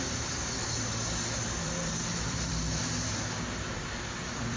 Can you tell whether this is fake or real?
fake